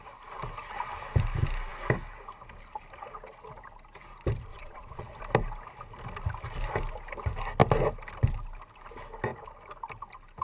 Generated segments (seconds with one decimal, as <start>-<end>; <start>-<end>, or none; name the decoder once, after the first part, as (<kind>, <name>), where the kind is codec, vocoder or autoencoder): 4.5-5.2 (vocoder, Vocos)